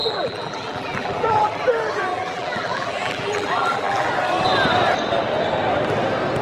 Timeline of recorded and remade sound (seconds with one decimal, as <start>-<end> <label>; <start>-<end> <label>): 0.0-1.6 remade; 1.6-2.1 recorded; 2.1-4.1 remade; 4.1-6.4 recorded